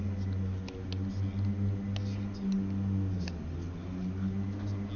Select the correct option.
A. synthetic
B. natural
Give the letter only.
B